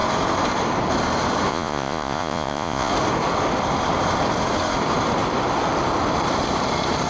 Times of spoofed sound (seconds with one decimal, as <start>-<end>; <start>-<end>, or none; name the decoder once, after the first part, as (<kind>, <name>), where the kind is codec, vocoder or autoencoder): 1.5-2.9 (vocoder, Vocos)